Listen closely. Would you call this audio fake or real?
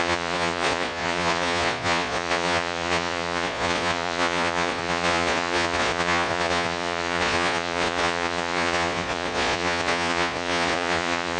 fake